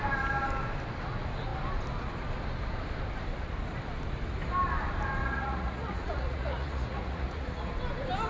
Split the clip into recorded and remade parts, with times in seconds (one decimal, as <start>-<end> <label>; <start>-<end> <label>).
0.0-5.2 recorded; 5.2-7.7 remade; 7.7-8.3 recorded